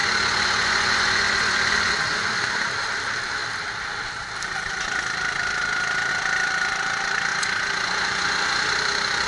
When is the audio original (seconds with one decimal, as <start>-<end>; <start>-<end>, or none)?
2.3-7.3; 8.5-9.3